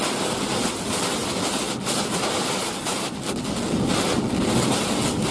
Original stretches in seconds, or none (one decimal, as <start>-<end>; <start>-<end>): 0.0-5.3